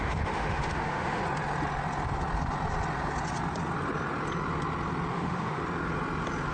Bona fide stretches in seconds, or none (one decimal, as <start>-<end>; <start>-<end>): 1.2-5.1; 5.6-6.5